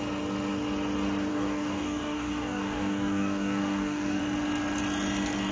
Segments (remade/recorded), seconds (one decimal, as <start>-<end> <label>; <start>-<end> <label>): 0.0-1.3 recorded; 1.3-4.2 remade; 4.2-5.5 recorded